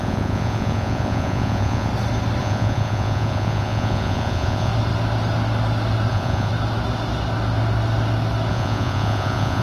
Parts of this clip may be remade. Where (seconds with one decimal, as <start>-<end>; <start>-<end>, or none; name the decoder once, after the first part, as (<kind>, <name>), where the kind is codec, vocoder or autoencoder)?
0.0-1.9 (vocoder, Vocos); 2.4-4.7; 6.1-6.5; 8.5-9.6